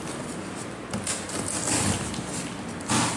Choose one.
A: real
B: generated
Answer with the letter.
A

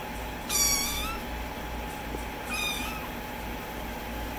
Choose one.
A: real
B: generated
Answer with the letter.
A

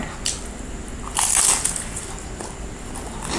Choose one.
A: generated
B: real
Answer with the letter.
B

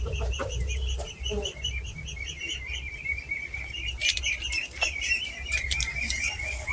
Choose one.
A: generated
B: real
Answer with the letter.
A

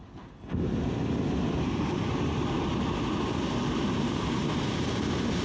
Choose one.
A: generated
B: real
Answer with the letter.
B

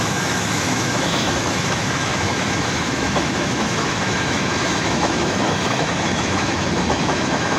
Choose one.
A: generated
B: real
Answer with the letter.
A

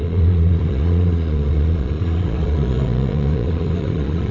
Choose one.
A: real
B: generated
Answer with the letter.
B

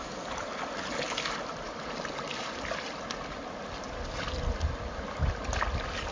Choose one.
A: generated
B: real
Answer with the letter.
B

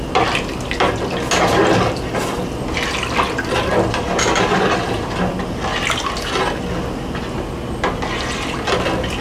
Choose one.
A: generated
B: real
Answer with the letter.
B